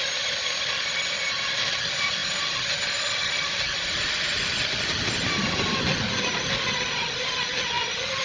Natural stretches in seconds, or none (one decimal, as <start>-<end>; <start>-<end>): 0.0-8.2